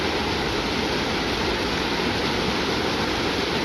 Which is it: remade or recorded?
recorded